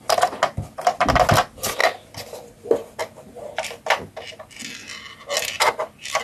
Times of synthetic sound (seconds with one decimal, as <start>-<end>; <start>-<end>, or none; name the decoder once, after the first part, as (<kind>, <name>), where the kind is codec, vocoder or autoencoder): none